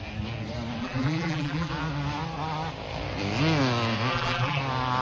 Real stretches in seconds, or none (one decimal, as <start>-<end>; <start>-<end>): 0.0-0.8; 1.7-4.1; 4.6-5.0